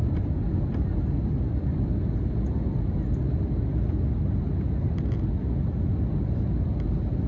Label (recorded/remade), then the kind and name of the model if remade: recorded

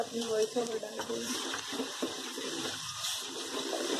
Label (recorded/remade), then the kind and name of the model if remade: remade, vocoder, BigVGAN v2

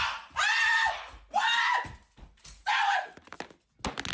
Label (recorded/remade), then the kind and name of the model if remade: recorded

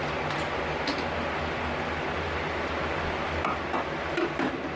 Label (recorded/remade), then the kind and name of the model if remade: recorded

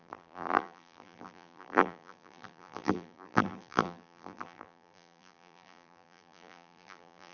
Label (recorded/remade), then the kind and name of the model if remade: remade, vocoder, BigVGAN v2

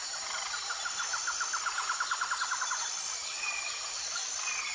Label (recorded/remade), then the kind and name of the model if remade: remade, vocoder, BigVGAN v2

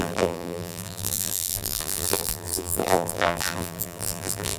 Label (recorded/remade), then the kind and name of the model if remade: remade, vocoder, BigVGAN v2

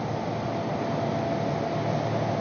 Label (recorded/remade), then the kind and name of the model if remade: recorded